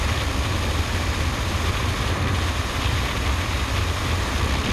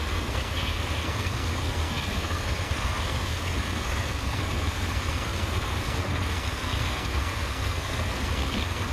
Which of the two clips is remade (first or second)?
second